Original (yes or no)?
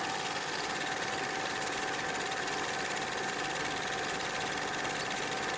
yes